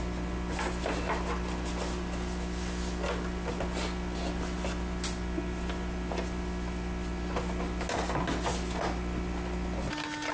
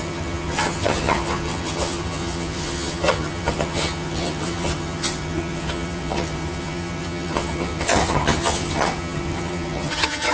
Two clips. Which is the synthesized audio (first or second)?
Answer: second